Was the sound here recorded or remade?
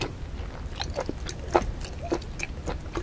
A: recorded